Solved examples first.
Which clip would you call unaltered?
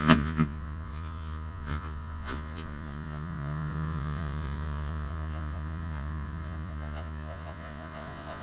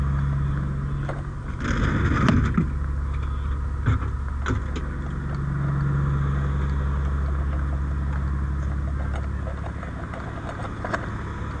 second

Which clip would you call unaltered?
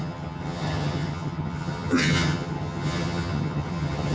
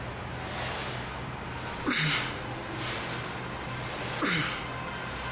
second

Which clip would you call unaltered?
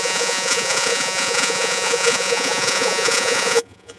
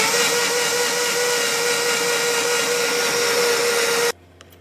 second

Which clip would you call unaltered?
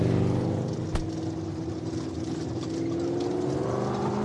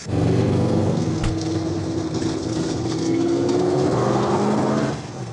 first